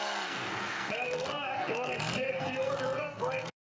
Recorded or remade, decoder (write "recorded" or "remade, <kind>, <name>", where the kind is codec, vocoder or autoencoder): remade, codec, SNAC